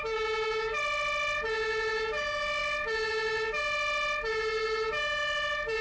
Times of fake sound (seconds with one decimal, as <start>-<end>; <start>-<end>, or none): none